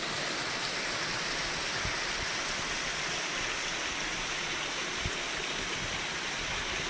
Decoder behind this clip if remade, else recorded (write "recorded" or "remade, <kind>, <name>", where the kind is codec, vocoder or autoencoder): recorded